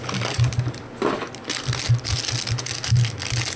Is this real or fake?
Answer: real